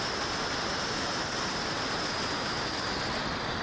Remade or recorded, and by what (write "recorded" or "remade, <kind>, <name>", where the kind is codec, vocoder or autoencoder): recorded